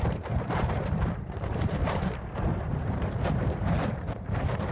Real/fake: fake